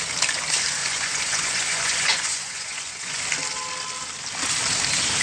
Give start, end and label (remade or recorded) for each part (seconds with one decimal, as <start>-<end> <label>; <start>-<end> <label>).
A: 0.0-0.8 recorded; 0.8-3.2 remade; 3.2-5.2 recorded